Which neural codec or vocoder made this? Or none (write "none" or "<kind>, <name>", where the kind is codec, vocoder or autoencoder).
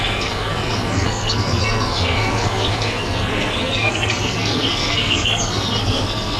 codec, SNAC